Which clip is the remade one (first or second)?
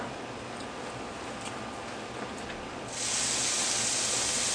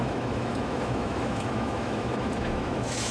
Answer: second